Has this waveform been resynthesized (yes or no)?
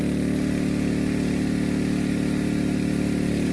no